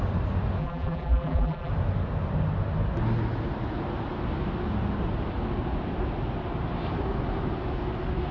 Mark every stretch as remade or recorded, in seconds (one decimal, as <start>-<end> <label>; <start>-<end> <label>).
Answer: 0.0-0.6 recorded; 0.6-1.7 remade; 1.7-8.3 recorded